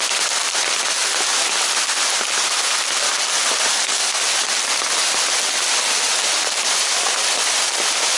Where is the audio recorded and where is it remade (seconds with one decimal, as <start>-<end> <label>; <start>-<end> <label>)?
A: 0.0-3.7 recorded; 3.7-4.2 remade; 4.2-8.2 recorded